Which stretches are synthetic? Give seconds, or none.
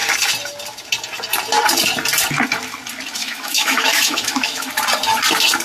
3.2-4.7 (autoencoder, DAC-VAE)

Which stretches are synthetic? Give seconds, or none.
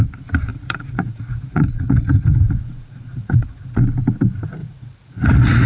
0.5-3.8 (vocoder, Vocos); 4.6-5.7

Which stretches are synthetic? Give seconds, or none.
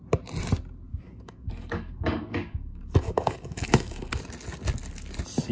0.9-4.2 (codec, DAC)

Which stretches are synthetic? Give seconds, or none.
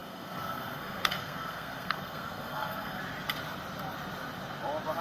0.0-3.0 (codec, SNAC)